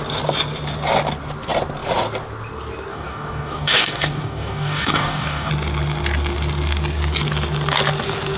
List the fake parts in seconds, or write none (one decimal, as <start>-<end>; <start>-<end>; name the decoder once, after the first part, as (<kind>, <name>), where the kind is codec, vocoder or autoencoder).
2.9-5.5 (codec, DAC)